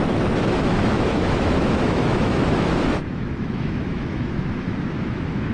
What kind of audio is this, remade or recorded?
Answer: remade